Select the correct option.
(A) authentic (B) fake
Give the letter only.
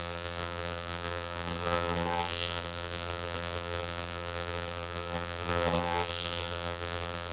B